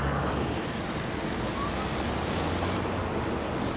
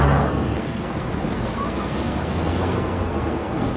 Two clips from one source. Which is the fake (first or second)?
second